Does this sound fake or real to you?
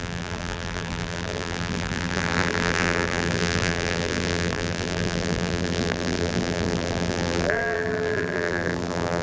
fake